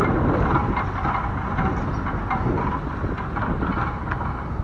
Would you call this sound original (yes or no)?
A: yes